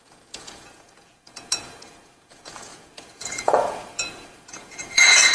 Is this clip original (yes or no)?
no